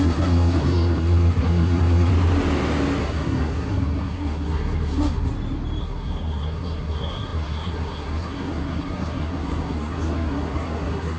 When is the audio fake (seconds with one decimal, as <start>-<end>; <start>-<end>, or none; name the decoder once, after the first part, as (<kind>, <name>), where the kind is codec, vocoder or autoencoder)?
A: 0.0-2.1 (codec, SNAC); 3.0-5.3; 5.8-11.2